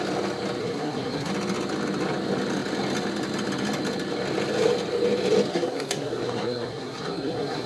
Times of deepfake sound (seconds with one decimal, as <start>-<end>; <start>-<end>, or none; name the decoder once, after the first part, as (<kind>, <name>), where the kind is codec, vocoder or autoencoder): 0.6-1.3 (codec, SNAC); 5.5-7.7